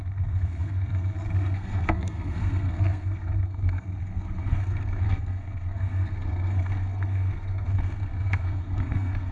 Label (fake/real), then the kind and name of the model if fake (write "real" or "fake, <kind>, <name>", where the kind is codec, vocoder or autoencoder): fake, codec, SNAC